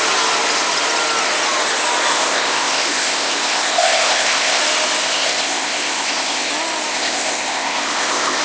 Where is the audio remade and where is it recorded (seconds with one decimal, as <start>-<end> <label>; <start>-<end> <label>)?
0.0-2.1 recorded; 2.1-4.6 remade; 4.6-5.0 recorded; 5.0-6.5 remade; 6.5-6.9 recorded; 6.9-8.4 remade